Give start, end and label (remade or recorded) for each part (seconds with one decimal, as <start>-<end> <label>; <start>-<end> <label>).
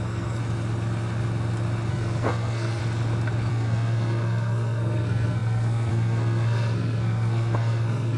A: 0.0-0.4 remade; 0.4-1.9 recorded; 1.9-2.8 remade; 2.8-3.5 recorded; 3.5-8.2 remade